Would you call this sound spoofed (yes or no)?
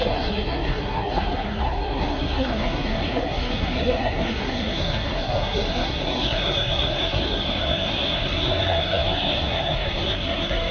yes